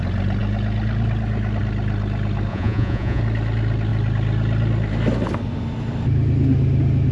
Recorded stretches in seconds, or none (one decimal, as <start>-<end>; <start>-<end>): 0.0-2.5; 3.2-7.1